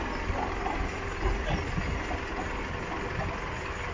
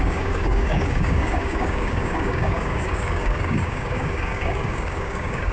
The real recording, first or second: first